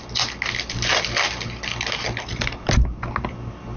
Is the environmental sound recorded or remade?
recorded